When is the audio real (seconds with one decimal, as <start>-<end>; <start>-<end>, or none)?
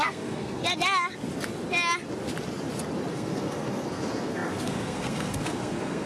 0.6-3.1